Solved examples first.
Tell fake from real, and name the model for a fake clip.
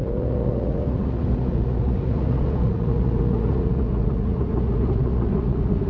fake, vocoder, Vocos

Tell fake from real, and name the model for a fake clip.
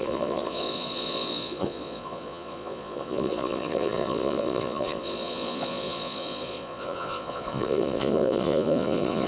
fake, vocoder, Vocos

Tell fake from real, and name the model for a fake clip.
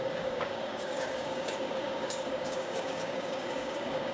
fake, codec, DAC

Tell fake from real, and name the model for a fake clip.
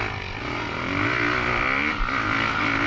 real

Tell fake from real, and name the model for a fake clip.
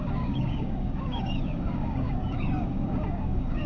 fake, codec, DAC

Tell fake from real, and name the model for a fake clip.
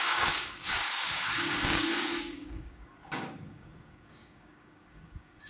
fake, codec, DAC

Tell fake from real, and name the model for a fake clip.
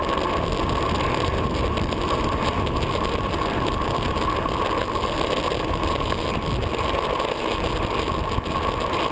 real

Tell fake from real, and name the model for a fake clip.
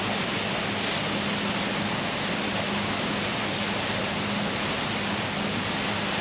real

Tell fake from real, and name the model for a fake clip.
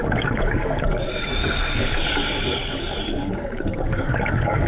fake, codec, DAC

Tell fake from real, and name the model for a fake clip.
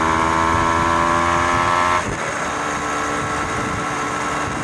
real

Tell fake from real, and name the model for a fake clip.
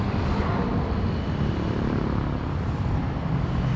real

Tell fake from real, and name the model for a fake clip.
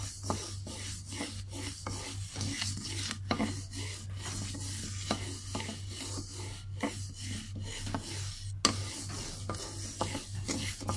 real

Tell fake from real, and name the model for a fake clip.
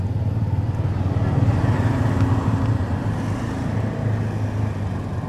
real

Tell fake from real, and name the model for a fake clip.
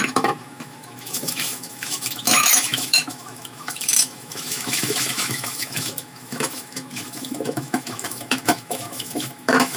fake, autoencoder, DAC-VAE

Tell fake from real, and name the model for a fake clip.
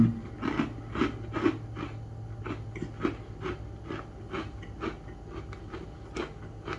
real